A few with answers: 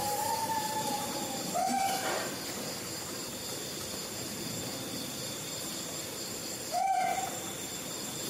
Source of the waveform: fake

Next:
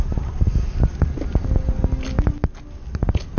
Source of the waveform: real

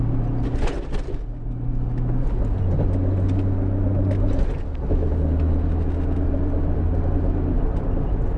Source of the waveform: real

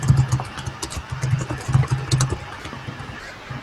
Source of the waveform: real